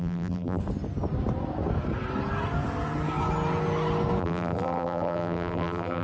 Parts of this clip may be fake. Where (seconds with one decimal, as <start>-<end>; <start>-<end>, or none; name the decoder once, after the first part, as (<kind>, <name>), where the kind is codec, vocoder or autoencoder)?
0.0-0.6 (vocoder, BigVGAN v2); 4.2-6.0